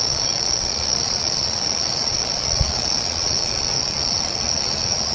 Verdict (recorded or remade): remade